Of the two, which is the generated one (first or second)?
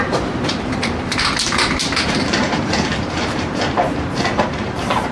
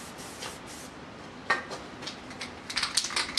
first